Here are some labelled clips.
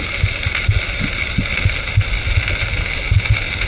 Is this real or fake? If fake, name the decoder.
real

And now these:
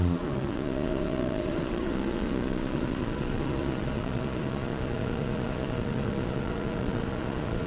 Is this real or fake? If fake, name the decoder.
fake, vocoder, Vocos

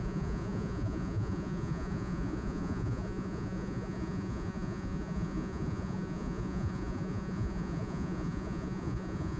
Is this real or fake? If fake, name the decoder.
fake, vocoder, Vocos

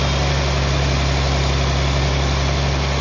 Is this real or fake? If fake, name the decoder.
real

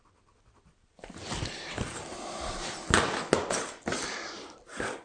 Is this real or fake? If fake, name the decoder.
real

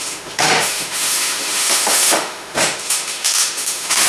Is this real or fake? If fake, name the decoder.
fake, autoencoder, DAC-VAE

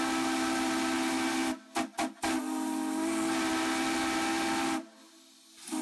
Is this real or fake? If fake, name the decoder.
real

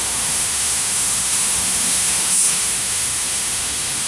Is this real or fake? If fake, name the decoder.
fake, autoencoder, DAC-VAE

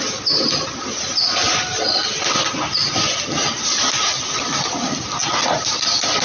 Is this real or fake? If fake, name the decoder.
real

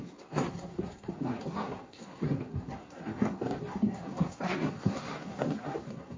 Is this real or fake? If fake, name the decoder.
fake, codec, SNAC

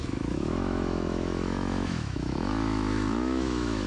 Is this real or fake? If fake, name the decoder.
fake, autoencoder, DAC-VAE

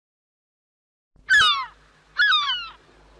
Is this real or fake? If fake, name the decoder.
real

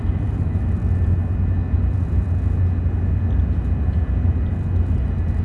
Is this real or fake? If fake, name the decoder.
real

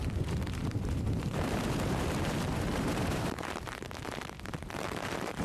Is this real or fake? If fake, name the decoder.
fake, vocoder, BigVGAN v2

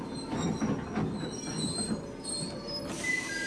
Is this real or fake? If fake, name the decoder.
real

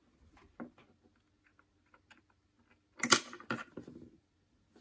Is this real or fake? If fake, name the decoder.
real